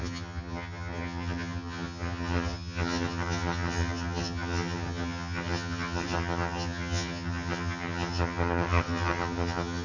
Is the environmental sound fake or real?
fake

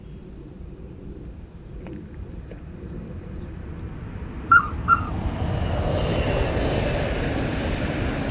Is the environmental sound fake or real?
real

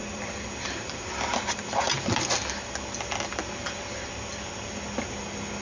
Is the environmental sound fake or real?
real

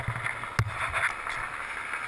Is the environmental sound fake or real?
real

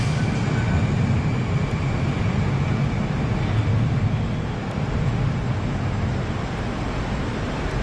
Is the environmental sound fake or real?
real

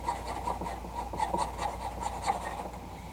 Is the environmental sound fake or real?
real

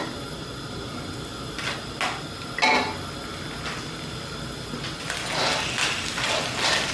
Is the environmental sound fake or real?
real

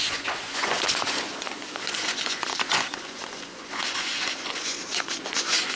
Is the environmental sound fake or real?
fake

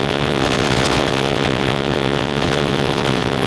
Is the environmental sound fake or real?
fake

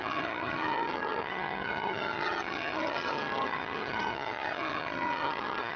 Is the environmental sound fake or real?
fake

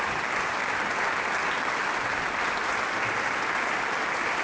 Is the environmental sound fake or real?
real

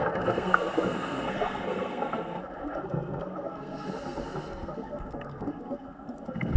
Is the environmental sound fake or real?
fake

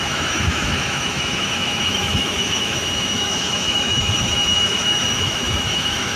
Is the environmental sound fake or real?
fake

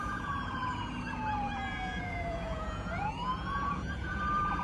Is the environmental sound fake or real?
fake